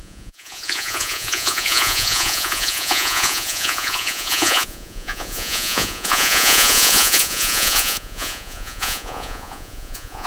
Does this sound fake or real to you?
fake